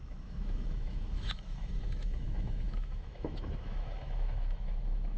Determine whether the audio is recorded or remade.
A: remade